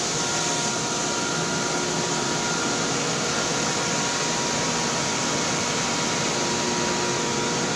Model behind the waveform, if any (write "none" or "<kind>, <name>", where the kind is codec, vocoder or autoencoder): none